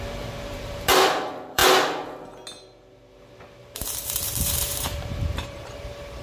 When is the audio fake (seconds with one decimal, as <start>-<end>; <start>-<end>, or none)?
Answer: 0.0-1.6; 3.6-6.2